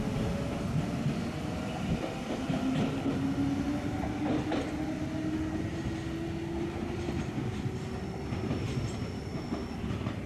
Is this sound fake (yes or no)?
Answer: no